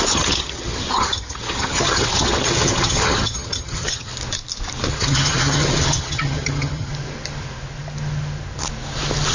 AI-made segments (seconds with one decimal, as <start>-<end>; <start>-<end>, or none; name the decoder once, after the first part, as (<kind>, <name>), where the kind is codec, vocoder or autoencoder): 0.0-4.1 (vocoder, HiFi-GAN); 4.9-6.9